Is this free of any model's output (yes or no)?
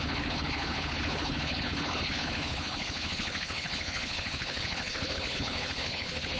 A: no